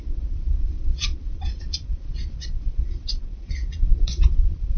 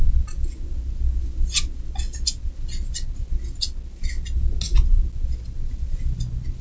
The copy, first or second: first